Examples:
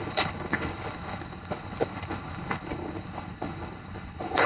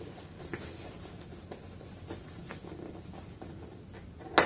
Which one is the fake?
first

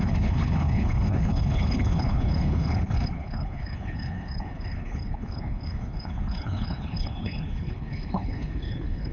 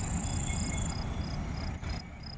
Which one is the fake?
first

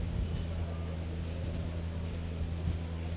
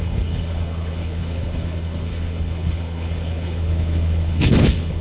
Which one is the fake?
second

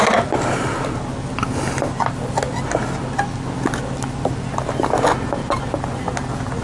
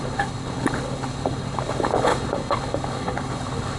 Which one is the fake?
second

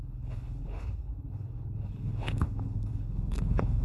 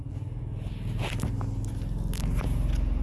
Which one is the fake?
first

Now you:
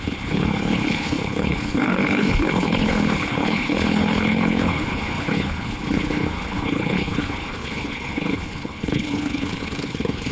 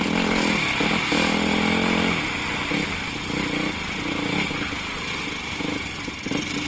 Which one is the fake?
first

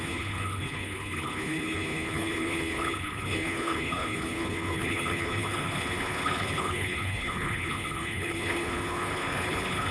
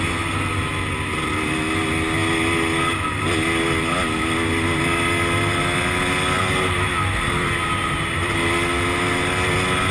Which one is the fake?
first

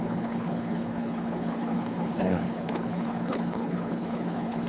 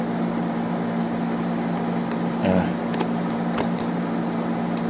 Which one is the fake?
first